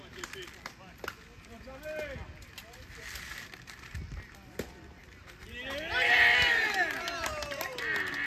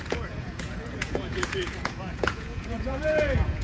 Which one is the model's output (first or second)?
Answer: second